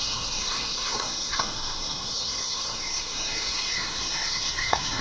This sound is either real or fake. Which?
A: fake